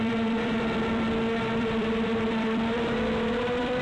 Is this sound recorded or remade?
remade